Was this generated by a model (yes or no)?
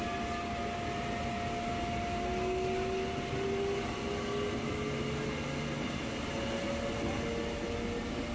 no